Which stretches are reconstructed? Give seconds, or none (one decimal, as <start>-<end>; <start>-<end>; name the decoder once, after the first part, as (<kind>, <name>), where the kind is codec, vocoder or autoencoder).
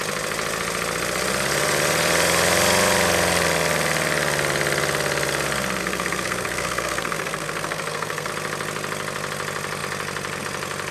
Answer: 5.8-8.3 (codec, SNAC)